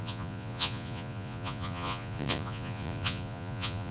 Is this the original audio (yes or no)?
no